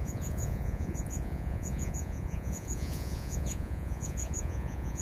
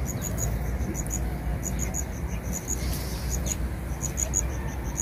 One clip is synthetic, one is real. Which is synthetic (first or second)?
first